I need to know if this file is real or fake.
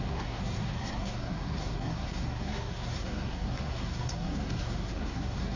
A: fake